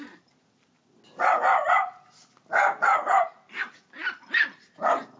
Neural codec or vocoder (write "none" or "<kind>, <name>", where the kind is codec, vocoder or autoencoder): none